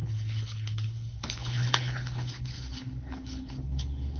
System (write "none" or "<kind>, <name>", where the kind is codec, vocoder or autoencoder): codec, HILCodec